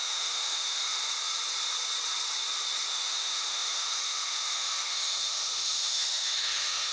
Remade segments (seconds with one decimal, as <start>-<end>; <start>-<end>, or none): 0.0-1.0; 2.9-6.9